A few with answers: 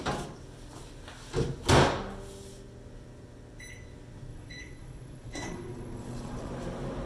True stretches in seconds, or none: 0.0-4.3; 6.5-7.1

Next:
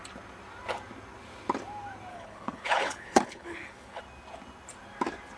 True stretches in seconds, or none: 0.0-2.1; 4.0-5.4